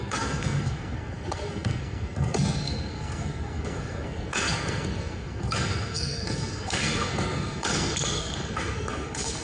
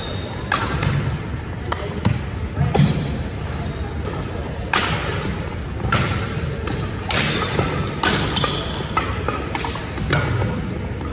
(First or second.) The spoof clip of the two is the first